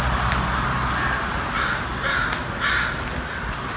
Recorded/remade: recorded